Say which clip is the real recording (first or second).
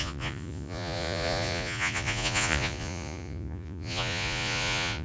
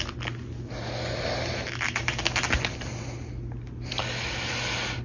second